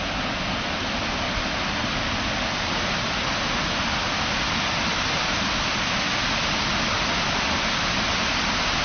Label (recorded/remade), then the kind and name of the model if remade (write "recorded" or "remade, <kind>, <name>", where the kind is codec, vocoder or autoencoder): recorded